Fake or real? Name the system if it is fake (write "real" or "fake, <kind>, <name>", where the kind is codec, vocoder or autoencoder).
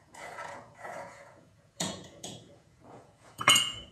fake, vocoder, Vocos